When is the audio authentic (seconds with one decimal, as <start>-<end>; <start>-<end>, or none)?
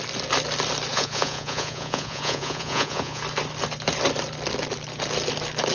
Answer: 0.0-0.9; 3.2-5.7